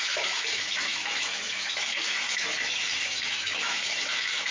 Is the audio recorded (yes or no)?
no